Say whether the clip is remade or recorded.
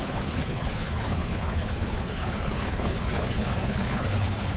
remade